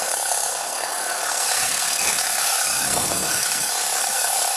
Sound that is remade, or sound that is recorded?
remade